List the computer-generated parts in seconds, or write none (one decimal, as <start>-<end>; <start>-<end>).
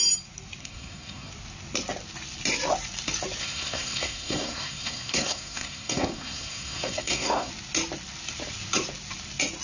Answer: 0.6-1.3; 3.4-7.5